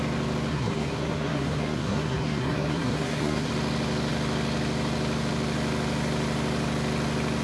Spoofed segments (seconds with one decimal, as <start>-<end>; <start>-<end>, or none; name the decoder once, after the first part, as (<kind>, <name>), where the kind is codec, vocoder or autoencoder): 0.5-3.5 (codec, SNAC)

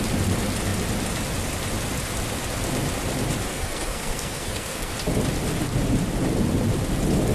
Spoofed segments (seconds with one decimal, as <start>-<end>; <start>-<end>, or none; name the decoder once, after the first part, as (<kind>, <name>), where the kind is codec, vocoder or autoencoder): 3.5-4.9 (codec, SNAC)

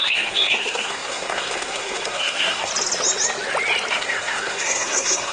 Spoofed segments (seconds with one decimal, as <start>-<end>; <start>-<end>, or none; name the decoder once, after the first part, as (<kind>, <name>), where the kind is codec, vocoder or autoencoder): 0.0-2.7 (codec, SNAC); 3.9-5.3

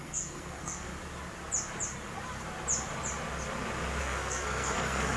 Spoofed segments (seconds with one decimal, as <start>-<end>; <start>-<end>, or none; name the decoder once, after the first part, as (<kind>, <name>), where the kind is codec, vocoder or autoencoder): 0.0-0.9 (codec, SNAC); 4.0-5.2